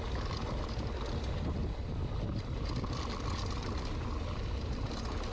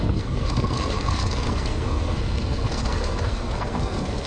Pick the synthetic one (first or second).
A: second